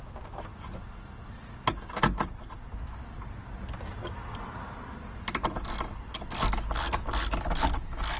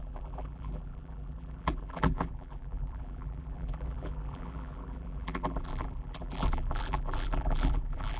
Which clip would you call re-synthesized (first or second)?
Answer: second